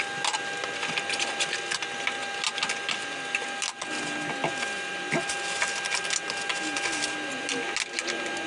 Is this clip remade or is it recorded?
recorded